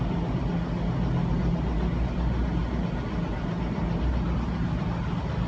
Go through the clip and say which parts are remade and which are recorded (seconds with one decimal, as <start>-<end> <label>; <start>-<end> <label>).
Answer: 0.0-5.5 recorded